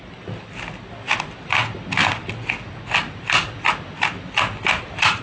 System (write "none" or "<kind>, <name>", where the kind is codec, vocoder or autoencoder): none